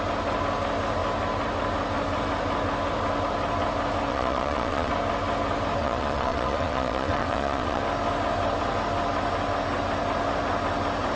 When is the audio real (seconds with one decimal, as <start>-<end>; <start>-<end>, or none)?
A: 0.0-4.1; 4.9-5.8; 7.8-11.2

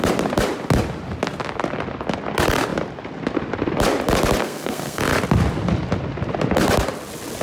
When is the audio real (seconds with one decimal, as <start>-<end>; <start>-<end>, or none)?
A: 0.0-4.4; 5.0-7.4

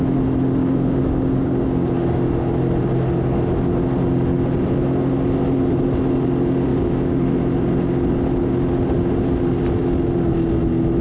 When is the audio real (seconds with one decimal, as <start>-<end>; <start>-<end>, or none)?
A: 0.0-0.6; 2.2-6.7; 7.3-11.0

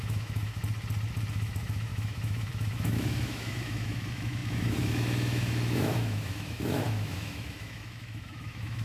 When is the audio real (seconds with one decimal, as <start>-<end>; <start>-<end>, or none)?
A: 0.6-1.3

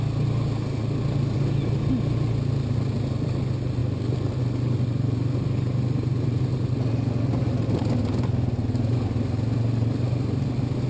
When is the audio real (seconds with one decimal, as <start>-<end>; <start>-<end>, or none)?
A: 0.0-10.9

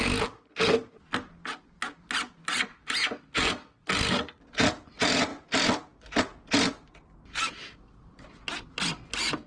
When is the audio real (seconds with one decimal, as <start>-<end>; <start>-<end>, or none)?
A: 0.0-9.5

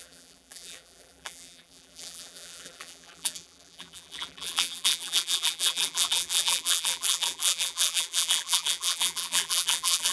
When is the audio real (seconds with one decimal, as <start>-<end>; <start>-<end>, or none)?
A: none

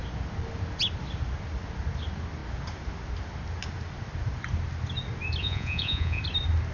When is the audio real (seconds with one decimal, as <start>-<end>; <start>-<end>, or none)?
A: 0.0-5.4; 6.2-6.7